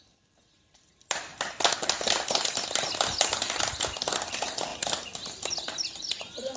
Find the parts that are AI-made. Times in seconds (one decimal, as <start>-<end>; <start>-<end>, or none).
0.0-1.3; 3.8-6.6